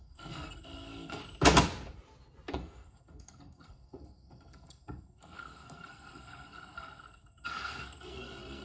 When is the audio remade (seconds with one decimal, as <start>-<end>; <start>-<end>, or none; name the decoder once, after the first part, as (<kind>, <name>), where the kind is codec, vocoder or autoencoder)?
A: 0.0-1.2 (codec, SNAC); 2.5-8.6